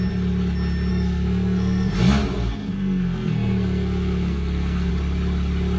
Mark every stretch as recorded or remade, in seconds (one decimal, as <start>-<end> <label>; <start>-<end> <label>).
0.0-0.9 recorded; 0.9-1.9 remade; 1.9-2.6 recorded; 2.6-4.9 remade; 4.9-5.8 recorded

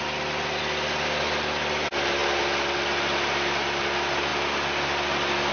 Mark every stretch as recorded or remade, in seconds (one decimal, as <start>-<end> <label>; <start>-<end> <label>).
0.0-5.5 recorded

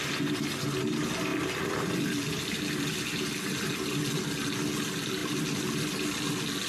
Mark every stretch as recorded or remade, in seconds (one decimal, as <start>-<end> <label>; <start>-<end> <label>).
0.0-6.7 recorded